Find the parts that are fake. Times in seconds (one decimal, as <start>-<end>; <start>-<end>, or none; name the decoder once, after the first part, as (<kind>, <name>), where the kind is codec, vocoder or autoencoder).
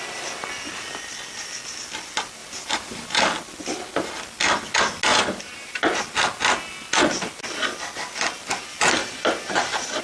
2.4-3.2 (vocoder, BigVGAN v2); 5.1-5.8; 9.0-10.0